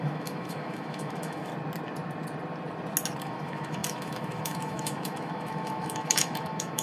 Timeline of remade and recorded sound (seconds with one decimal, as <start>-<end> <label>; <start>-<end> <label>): 0.0-1.5 remade; 1.5-3.2 recorded; 3.2-6.8 remade